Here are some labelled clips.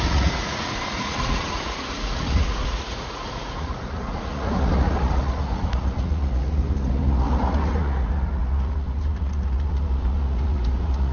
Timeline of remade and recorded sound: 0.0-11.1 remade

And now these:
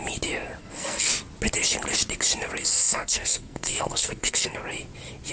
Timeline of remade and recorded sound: 0.0-0.6 recorded; 0.6-1.1 remade; 1.1-2.6 recorded; 2.6-4.6 remade; 4.6-5.3 recorded

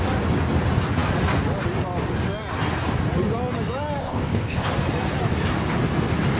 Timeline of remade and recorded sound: 0.0-4.0 recorded; 4.0-4.7 remade; 4.7-6.4 recorded

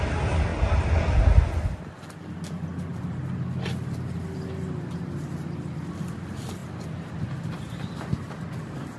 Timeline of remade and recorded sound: 0.0-9.0 recorded

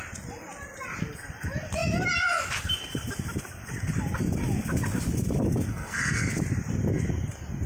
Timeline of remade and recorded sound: 0.0-5.7 recorded; 5.7-6.3 remade; 6.3-7.7 recorded

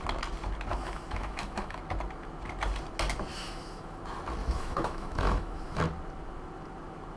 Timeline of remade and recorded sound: 0.0-0.7 recorded; 0.7-1.8 remade; 1.8-3.3 recorded; 3.3-4.0 remade; 4.0-4.4 recorded; 4.4-5.8 remade; 5.8-7.2 recorded